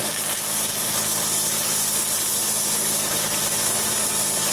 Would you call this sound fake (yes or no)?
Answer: no